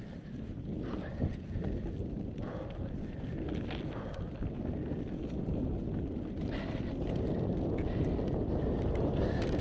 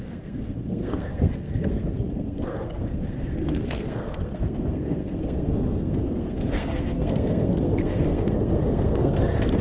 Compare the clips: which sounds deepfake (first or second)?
second